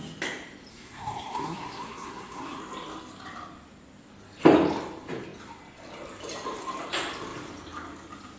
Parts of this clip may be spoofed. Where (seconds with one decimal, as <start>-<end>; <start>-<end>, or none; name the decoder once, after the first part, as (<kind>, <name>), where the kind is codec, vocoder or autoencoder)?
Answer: 0.7-2.6 (codec, SNAC)